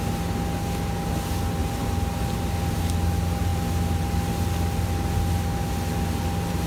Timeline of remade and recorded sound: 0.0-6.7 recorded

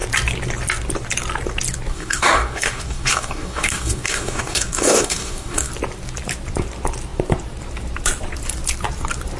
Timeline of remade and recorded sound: 0.0-1.9 recorded; 1.9-5.7 remade; 5.7-9.4 recorded

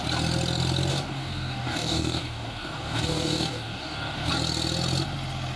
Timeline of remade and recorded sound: 0.0-0.9 recorded; 0.9-4.3 remade; 4.3-5.6 recorded

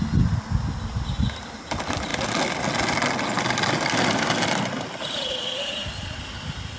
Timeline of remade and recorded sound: 0.0-6.8 recorded

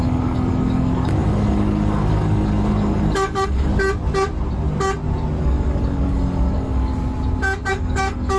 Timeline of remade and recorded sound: 0.0-3.7 remade; 3.7-5.4 recorded; 5.4-6.9 remade; 6.9-7.7 recorded; 7.7-8.4 remade

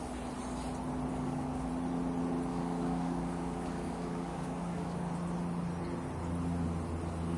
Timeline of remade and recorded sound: 0.0-1.1 recorded; 1.1-1.7 remade; 1.7-2.5 recorded; 2.5-5.1 remade; 5.1-7.4 recorded

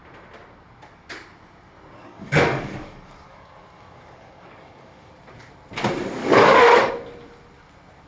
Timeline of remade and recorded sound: 0.0-2.0 recorded; 2.0-5.1 remade; 5.1-6.2 recorded; 6.2-6.9 remade; 6.9-8.1 recorded